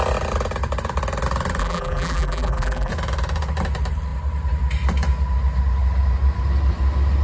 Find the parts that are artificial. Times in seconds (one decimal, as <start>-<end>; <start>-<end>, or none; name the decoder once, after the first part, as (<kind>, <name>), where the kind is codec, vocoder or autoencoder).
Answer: 1.6-2.9 (vocoder, BigVGAN v2)